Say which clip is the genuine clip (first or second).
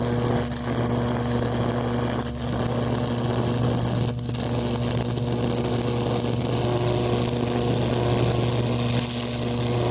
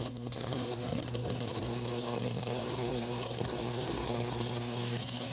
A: first